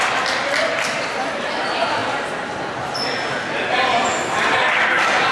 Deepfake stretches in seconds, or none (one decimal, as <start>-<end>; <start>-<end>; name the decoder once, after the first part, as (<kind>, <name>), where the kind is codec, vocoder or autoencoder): none

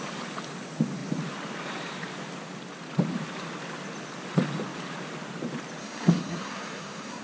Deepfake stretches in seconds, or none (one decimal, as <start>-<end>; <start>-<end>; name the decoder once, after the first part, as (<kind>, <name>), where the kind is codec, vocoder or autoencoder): 5.8-7.2 (codec, SNAC)

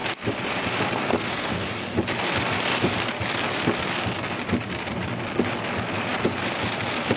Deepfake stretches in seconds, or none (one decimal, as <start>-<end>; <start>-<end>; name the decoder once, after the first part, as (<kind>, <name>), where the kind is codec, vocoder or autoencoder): none